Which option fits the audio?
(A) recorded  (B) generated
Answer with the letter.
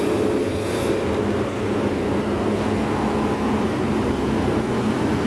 A